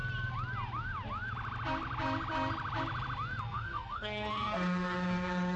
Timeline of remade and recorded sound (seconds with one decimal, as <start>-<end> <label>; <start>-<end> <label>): 0.0-3.4 recorded; 3.4-5.6 remade

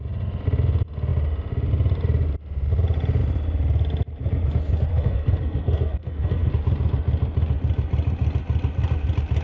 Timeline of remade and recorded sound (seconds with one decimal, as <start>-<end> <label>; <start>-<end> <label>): 0.0-4.9 recorded; 4.9-6.5 remade; 6.5-9.4 recorded